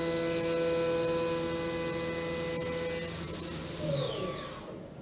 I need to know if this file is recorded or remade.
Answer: recorded